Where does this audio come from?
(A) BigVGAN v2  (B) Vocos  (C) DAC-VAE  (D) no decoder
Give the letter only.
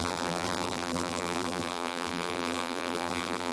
A